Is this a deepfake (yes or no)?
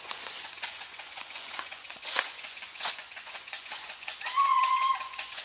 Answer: yes